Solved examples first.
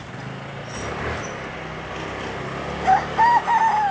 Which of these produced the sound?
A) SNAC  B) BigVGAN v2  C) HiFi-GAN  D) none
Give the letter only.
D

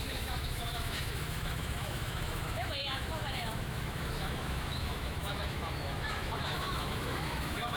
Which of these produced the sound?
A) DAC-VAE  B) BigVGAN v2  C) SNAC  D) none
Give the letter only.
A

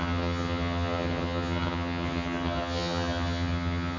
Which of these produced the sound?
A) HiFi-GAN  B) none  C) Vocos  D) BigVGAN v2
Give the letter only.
A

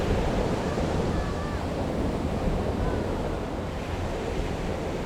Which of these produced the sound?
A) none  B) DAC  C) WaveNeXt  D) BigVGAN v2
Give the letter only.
D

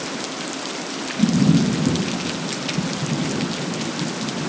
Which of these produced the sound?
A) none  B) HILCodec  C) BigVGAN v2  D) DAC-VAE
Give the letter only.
A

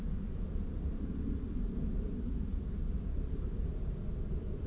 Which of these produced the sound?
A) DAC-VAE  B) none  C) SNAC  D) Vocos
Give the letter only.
B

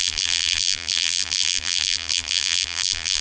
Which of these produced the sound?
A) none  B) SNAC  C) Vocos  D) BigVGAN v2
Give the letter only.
D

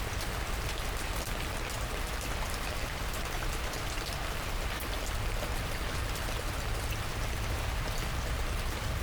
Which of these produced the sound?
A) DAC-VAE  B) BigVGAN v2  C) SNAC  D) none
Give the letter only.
D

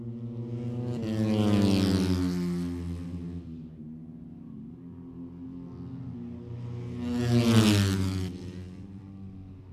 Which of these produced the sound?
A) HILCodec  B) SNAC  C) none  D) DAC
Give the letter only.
C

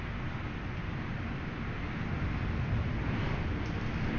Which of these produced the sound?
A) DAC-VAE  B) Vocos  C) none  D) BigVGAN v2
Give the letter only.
C